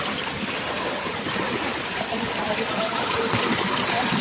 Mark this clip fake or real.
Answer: real